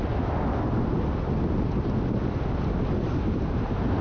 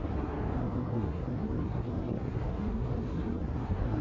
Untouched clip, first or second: first